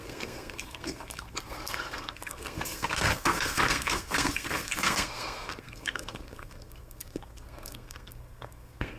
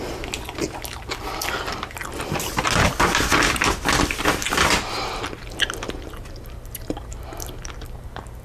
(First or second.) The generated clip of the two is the first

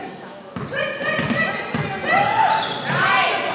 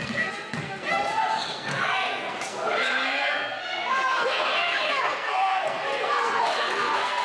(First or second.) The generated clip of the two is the second